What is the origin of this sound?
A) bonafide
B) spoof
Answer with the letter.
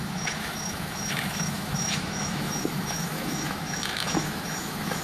B